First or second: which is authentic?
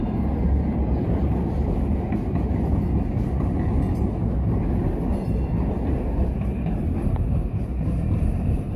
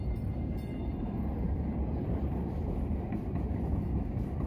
first